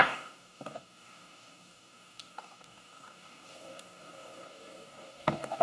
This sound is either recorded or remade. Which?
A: remade